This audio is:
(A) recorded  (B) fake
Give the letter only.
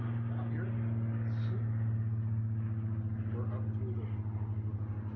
A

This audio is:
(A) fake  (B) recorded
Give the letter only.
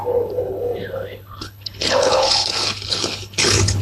A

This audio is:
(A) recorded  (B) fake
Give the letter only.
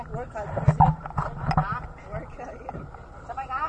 A